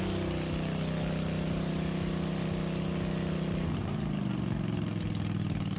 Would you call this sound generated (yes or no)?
no